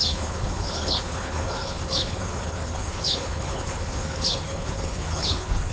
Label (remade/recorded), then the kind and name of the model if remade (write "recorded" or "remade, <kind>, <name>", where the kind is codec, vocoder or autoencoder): remade, codec, HILCodec